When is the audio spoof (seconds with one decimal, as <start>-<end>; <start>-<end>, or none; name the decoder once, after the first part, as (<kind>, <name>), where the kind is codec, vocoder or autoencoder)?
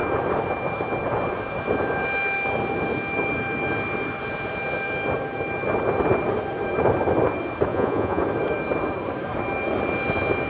7.7-8.2 (vocoder, Vocos)